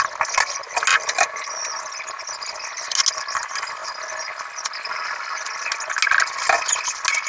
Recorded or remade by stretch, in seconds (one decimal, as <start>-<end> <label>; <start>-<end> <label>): 0.0-0.9 recorded; 0.9-1.6 remade; 1.6-7.3 recorded